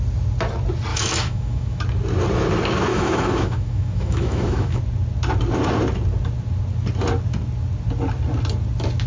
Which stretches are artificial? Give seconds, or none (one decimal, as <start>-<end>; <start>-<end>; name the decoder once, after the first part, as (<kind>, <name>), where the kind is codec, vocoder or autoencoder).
0.9-1.8 (autoencoder, DAC-VAE); 2.9-4.8